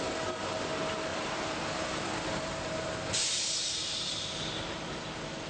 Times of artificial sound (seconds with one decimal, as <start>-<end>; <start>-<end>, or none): 1.1-3.1